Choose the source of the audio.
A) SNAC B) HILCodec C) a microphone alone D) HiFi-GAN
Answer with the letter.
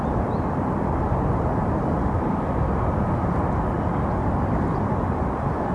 C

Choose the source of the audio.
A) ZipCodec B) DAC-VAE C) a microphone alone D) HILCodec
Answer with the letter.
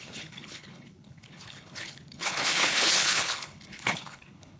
D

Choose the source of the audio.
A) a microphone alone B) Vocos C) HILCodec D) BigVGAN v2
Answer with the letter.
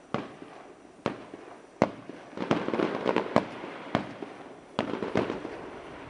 A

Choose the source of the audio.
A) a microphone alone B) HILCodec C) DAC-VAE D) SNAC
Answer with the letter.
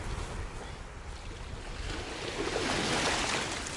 A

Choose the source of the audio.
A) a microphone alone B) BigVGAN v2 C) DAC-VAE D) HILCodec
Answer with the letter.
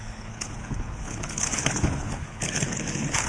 D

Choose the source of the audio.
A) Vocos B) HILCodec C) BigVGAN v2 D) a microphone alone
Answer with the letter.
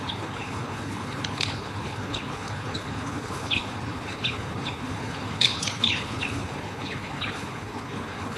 B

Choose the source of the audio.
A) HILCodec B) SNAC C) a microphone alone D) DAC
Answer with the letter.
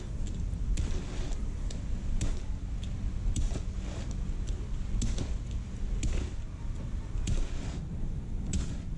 C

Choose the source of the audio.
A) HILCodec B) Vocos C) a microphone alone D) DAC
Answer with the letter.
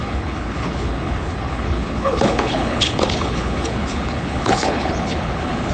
A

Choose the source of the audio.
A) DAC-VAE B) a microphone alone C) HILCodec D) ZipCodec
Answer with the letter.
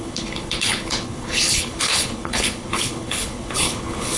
C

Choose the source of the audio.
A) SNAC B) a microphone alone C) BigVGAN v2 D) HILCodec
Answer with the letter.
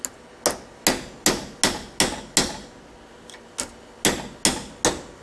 B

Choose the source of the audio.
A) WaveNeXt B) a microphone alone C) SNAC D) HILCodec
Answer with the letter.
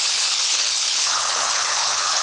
D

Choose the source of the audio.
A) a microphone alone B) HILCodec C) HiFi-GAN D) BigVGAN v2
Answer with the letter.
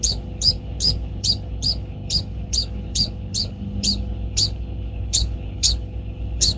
B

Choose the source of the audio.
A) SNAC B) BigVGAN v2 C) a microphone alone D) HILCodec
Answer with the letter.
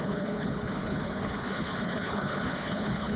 D